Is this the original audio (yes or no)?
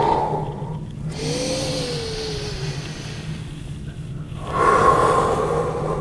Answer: yes